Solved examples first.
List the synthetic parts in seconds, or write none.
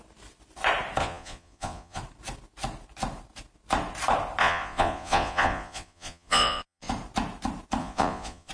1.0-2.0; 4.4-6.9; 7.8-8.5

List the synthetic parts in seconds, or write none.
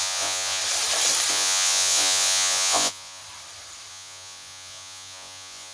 0.0-0.6; 1.3-3.2; 3.9-5.7